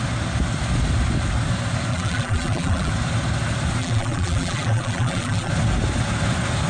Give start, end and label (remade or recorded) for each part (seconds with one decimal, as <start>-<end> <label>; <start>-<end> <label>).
0.0-1.9 recorded; 1.9-2.9 remade; 2.9-3.8 recorded; 3.8-5.5 remade; 5.5-6.7 recorded